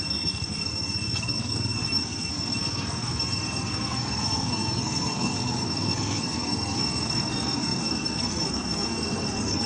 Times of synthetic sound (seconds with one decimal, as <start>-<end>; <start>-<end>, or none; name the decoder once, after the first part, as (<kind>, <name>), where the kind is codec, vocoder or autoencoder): 0.0-9.7 (codec, SNAC)

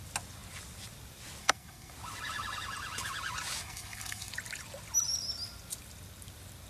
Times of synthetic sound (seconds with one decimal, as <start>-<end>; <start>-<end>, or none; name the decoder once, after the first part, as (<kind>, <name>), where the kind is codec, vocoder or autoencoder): 1.4-1.9 (codec, SNAC); 3.6-4.3

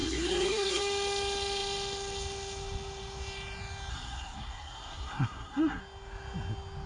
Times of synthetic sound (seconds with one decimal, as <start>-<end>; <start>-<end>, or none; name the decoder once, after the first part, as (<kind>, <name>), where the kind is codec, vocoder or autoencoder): 0.0-0.8 (codec, SNAC); 3.9-5.8

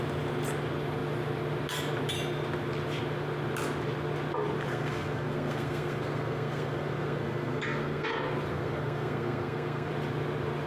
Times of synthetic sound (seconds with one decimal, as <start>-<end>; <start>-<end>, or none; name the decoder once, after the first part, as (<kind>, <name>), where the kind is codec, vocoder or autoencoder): 4.7-8.1 (codec, SNAC); 8.5-9.9

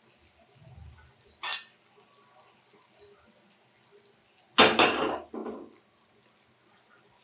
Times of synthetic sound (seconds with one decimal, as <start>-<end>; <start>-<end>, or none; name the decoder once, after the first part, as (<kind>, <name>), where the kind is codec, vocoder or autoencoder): none

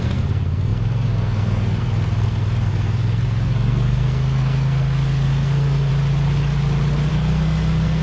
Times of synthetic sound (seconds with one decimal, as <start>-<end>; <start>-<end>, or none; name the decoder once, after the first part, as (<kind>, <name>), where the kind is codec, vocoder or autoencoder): 0.0-5.9 (codec, SNAC); 7.1-8.0

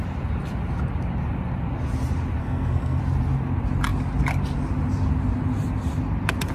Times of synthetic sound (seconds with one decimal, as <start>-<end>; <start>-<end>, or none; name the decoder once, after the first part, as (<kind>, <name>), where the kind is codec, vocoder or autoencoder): 2.4-3.0 (codec, SNAC)

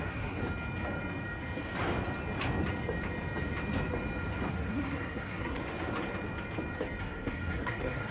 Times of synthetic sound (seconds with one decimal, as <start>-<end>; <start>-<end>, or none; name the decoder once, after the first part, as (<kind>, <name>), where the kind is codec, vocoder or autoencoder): 0.0-0.4 (codec, SNAC); 4.5-5.6; 7.0-8.1